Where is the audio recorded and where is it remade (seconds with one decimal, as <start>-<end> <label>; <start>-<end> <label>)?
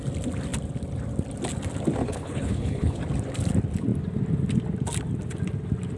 0.0-2.0 recorded; 2.0-3.0 remade; 3.0-6.0 recorded